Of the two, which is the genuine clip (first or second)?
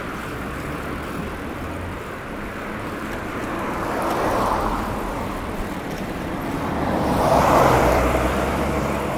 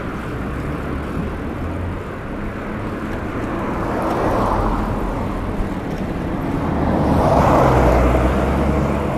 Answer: second